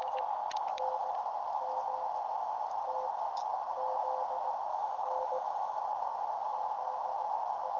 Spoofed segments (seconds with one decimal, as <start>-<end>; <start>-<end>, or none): 4.7-5.8